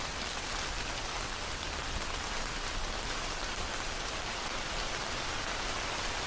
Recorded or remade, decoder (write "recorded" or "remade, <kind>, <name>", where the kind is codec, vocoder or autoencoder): recorded